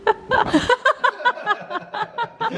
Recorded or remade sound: remade